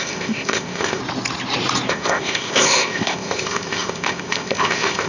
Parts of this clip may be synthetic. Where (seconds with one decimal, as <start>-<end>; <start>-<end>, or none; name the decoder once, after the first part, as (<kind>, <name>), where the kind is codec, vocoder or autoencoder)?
0.0-1.0 (codec, ZipCodec); 1.9-5.1